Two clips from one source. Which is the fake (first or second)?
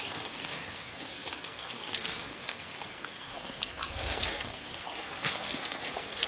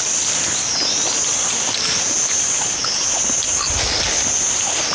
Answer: first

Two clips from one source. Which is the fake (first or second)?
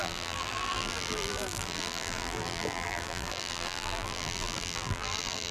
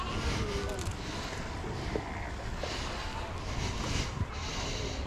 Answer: first